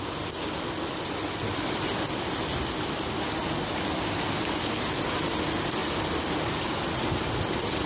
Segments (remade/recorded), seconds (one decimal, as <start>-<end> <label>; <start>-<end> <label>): 0.0-5.8 recorded; 5.8-7.3 remade; 7.3-7.9 recorded